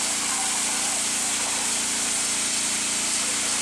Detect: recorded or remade recorded